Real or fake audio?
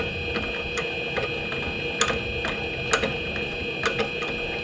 real